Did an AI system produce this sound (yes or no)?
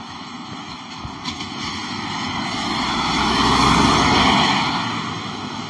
yes